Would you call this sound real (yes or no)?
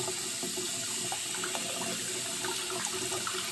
yes